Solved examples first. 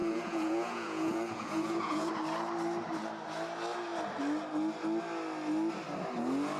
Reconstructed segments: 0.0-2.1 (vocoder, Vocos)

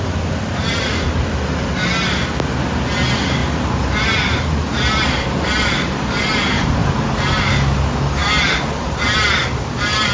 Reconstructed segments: none

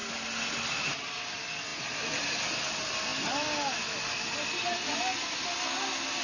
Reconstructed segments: none

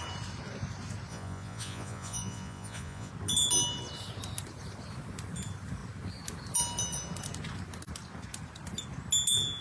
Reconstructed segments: 1.1-3.1 (vocoder, Vocos)

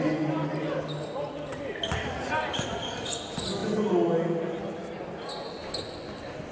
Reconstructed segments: none

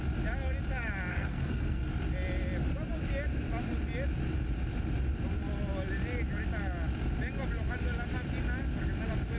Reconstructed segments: 1.1-1.9 (codec, SNAC)

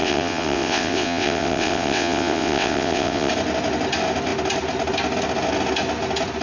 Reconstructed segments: 0.0-3.3 (vocoder, WaveNeXt)

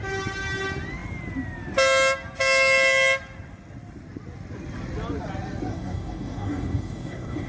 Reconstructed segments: 5.7-7.5 (codec, DAC)